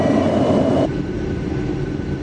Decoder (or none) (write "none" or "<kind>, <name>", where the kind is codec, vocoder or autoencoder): none